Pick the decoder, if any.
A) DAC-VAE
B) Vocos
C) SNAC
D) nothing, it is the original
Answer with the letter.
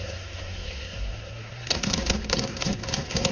C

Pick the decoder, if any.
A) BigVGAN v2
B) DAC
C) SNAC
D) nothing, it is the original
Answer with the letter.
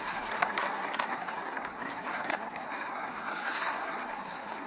C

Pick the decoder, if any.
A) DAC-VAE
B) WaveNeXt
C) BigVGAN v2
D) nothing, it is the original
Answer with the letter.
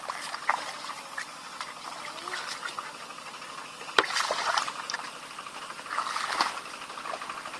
D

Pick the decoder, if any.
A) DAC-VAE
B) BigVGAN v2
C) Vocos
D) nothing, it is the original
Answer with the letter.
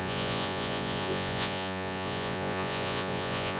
C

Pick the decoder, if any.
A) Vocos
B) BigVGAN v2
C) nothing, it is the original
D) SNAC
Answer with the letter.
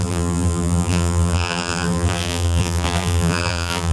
B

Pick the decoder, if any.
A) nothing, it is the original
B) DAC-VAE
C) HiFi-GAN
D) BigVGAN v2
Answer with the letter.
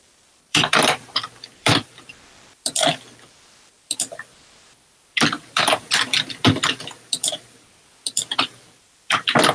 D